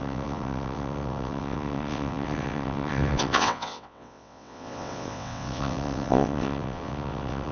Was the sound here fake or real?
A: fake